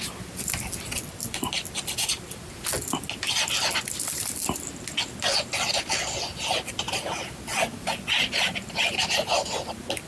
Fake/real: real